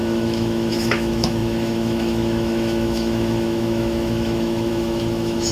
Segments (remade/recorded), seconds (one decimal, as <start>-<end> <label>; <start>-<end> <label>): 0.0-5.5 remade